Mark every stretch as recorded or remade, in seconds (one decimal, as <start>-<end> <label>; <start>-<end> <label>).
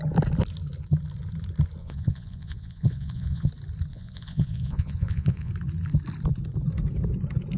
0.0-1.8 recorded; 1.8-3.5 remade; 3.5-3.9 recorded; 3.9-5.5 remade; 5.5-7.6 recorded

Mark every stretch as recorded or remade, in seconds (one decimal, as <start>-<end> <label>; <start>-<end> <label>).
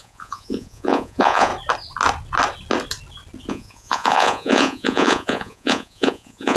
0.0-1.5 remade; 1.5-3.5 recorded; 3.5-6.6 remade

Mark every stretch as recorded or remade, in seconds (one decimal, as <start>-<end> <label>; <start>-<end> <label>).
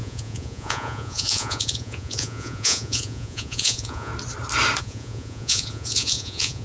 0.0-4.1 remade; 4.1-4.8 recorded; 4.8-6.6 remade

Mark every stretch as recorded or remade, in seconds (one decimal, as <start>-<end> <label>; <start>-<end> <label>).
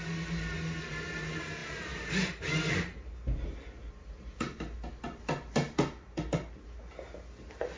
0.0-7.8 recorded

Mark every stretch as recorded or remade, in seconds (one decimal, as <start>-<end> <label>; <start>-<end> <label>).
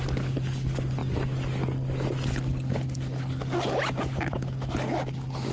0.0-5.5 recorded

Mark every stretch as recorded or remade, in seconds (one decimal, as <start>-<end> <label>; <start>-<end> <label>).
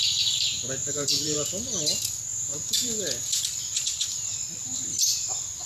0.0-0.8 recorded; 0.8-1.8 remade; 1.8-2.3 recorded; 2.3-3.4 remade; 3.4-5.7 recorded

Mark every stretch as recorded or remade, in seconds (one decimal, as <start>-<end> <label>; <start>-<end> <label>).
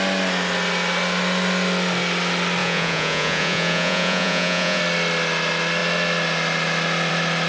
0.0-2.6 recorded; 2.6-4.8 remade; 4.8-7.5 recorded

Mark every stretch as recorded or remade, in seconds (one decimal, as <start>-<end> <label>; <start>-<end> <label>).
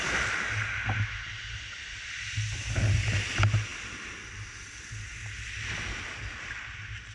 0.0-7.1 recorded